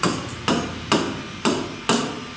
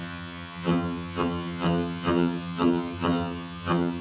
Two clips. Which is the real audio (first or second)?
first